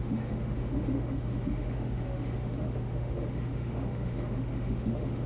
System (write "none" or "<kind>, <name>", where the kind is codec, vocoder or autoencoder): autoencoder, DAC-VAE